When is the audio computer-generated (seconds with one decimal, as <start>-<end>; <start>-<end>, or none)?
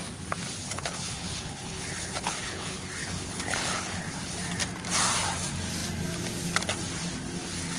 0.6-4.4